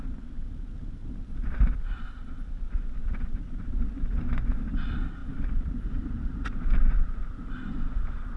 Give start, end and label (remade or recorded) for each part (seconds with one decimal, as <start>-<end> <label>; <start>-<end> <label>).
0.0-3.0 recorded; 3.0-4.2 remade; 4.2-5.2 recorded; 5.2-7.7 remade; 7.7-8.4 recorded